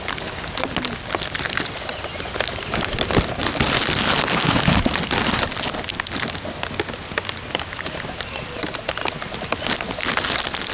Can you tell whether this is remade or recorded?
recorded